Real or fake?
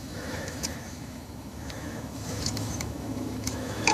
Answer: fake